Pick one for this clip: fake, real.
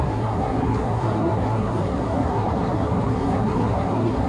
fake